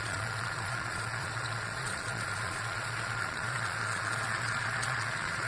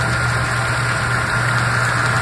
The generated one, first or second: first